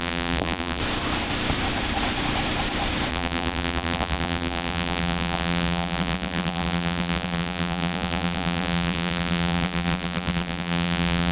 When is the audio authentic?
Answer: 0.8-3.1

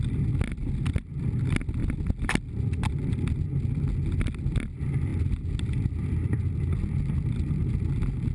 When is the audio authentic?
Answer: 0.0-8.3

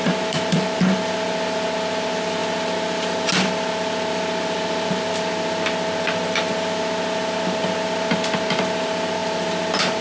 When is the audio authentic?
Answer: 0.0-10.0

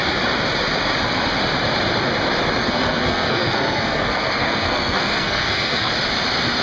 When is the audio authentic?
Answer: 0.0-2.6; 5.9-6.6

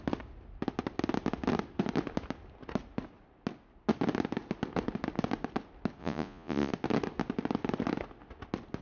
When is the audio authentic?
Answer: 0.0-6.0; 6.7-8.8

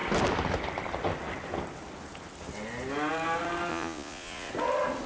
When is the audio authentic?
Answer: 0.0-3.7; 4.5-5.1

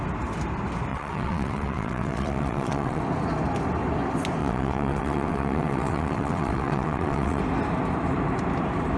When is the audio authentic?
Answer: 0.0-0.9; 3.0-4.4; 7.4-9.0